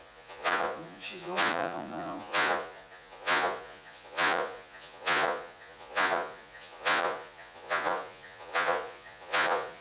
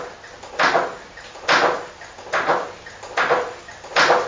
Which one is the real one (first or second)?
second